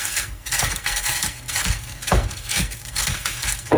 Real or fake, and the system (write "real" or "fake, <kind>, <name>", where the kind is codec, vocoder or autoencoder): fake, codec, SNAC